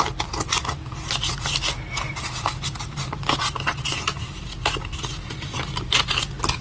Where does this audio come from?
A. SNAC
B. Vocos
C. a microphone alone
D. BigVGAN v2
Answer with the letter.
C